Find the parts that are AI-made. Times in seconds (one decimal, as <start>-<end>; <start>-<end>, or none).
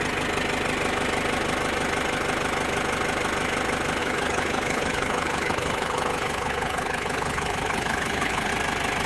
4.0-8.5